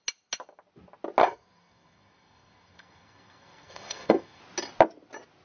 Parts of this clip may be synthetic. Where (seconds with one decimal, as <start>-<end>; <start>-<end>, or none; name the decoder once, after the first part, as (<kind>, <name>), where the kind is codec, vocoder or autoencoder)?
1.2-4.4 (codec, SNAC)